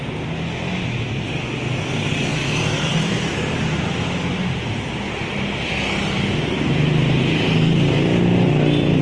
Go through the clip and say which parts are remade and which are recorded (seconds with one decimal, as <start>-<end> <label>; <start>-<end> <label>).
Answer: 0.0-2.3 recorded; 2.3-3.8 remade; 3.8-9.0 recorded